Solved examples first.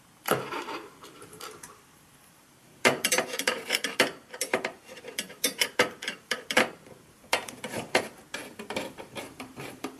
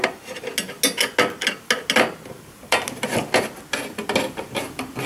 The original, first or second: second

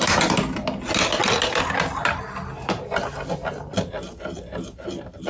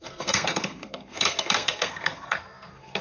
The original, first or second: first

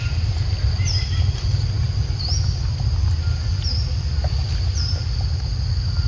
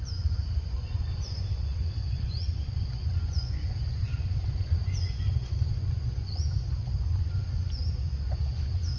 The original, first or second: first